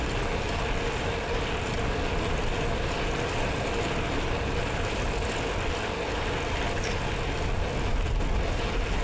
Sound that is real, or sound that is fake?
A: real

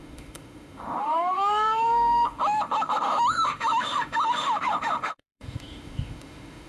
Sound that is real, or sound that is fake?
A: fake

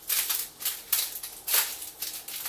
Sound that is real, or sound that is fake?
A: real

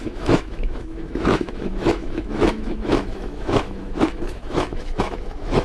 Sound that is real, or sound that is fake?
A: fake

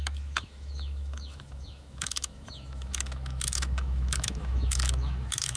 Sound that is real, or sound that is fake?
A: fake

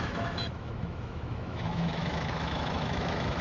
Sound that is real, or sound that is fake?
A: fake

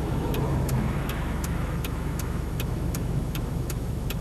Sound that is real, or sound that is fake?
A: fake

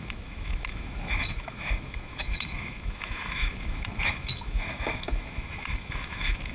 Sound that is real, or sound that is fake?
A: fake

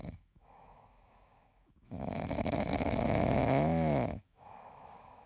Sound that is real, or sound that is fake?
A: fake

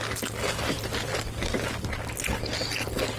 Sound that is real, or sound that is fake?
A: real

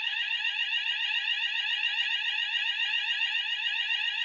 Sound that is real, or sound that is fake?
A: real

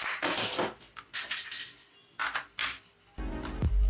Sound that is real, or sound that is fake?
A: real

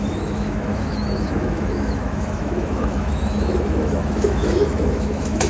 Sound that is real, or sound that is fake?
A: fake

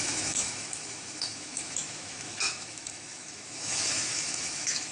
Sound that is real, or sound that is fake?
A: fake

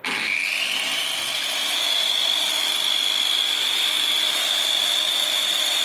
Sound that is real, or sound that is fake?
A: real